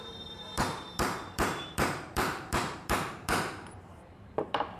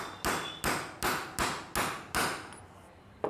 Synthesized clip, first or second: first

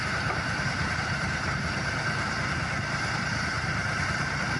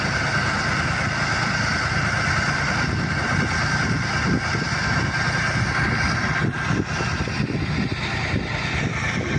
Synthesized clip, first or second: first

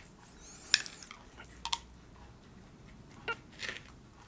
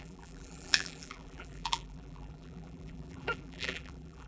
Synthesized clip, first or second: second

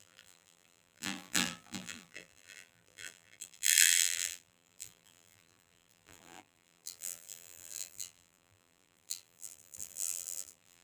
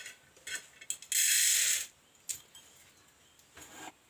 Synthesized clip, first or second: first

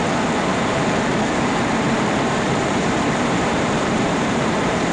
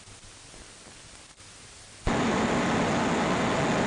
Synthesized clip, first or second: first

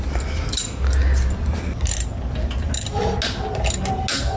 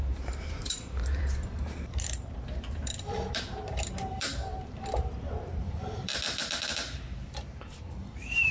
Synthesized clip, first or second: second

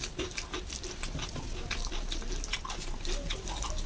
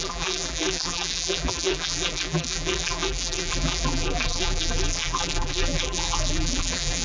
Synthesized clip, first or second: second